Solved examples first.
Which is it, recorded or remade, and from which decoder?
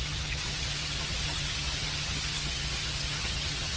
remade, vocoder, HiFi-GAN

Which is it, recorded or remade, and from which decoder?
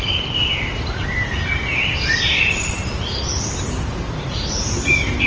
remade, vocoder, BigVGAN v2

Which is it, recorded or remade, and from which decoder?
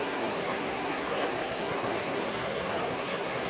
remade, codec, SNAC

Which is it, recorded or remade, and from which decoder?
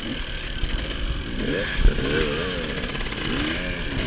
recorded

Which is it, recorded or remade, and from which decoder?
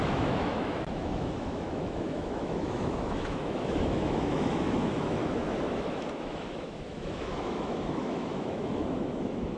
remade, autoencoder, DAC-VAE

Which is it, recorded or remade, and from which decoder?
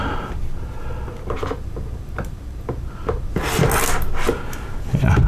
recorded